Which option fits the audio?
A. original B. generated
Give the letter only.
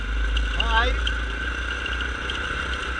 A